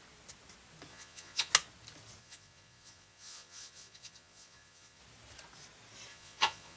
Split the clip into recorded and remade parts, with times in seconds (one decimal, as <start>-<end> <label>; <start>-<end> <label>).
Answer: 0.0-0.9 recorded; 0.9-1.5 remade; 1.5-2.2 recorded; 2.2-5.0 remade; 5.0-6.1 recorded; 6.1-6.8 remade